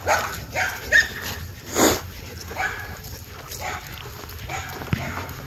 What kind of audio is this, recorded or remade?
recorded